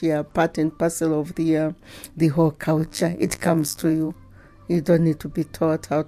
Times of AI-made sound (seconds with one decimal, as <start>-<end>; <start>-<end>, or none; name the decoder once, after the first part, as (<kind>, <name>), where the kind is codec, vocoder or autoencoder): 2.8-4.1 (vocoder, BigVGAN v2)